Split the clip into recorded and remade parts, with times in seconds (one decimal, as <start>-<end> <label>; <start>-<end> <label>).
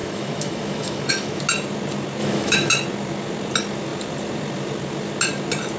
0.0-1.4 remade; 1.4-2.2 recorded; 2.2-2.7 remade; 2.7-5.8 recorded